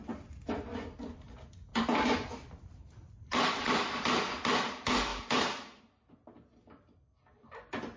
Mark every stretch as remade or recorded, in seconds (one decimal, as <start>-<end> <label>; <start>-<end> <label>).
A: 0.0-1.7 recorded; 1.7-3.6 remade; 3.6-5.1 recorded; 5.1-5.8 remade; 5.8-8.0 recorded